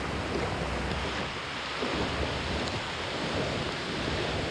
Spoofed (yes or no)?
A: no